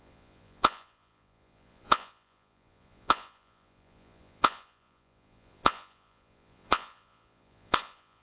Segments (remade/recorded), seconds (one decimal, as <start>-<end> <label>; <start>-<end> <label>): 0.0-8.2 remade